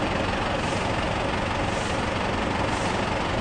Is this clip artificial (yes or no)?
no